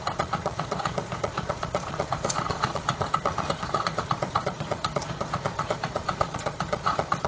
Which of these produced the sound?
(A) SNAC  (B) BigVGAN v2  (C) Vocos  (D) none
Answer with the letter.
C